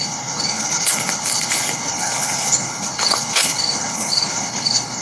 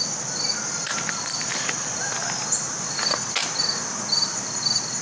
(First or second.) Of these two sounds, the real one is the second